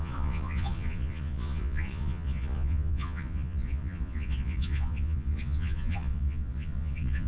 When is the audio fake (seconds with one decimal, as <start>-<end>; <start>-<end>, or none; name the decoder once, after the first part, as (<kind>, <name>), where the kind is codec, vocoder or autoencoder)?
0.0-7.3 (vocoder, Vocos)